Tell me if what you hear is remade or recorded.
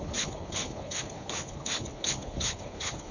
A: remade